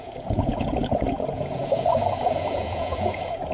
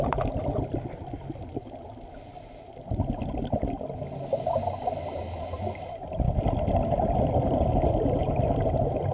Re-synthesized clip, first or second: first